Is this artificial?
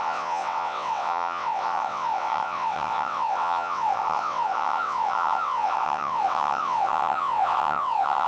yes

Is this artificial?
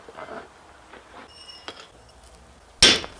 no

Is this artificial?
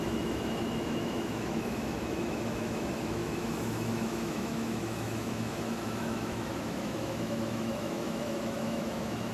yes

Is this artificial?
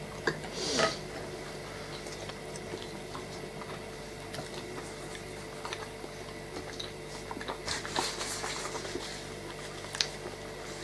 no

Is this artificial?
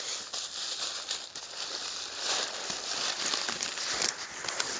no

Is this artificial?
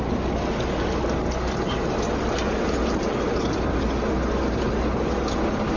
no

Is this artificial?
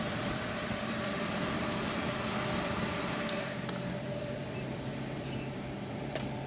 yes